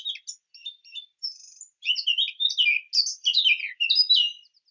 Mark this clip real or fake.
real